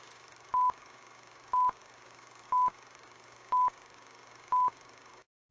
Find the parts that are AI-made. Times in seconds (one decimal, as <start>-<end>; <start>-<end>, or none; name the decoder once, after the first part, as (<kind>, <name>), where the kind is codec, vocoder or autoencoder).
0.0-5.5 (codec, DAC)